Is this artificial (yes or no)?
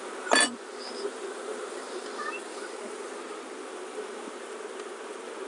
no